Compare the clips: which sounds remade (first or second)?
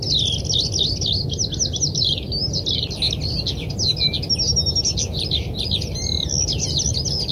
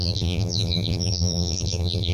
second